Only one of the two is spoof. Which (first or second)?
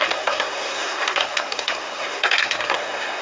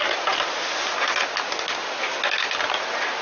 first